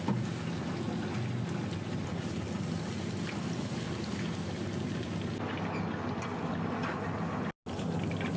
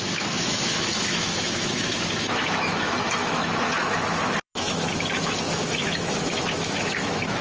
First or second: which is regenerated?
second